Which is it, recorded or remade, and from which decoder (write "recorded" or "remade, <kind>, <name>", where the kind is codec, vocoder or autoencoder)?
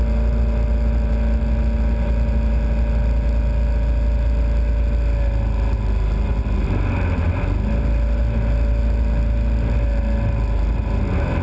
recorded